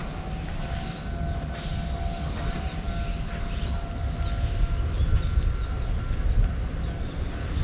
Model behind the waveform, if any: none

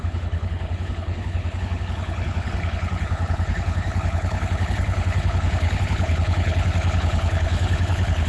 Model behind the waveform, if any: codec, HILCodec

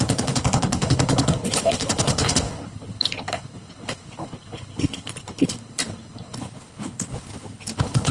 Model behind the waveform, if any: codec, HILCodec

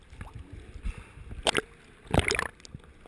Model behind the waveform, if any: none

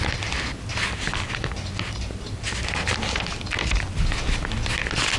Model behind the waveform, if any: none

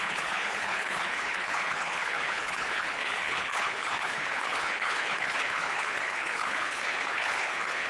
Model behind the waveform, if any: codec, HILCodec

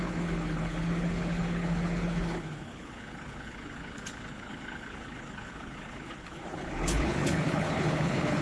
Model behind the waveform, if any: codec, HILCodec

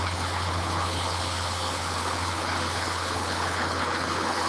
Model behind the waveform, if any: codec, HILCodec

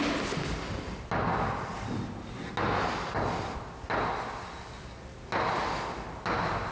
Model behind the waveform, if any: none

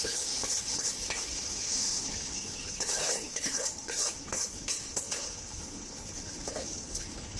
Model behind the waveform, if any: codec, HILCodec